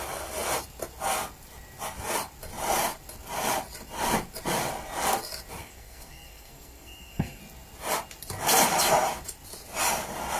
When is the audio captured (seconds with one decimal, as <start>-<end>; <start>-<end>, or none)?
0.0-5.6; 7.4-10.4